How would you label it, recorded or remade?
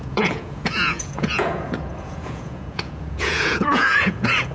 remade